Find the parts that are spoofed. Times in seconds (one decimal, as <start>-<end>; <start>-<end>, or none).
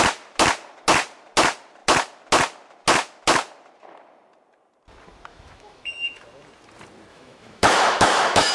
5.3-6.2; 7.1-8.5